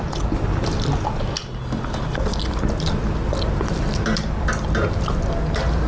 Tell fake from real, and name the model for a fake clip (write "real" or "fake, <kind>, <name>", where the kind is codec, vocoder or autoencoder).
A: real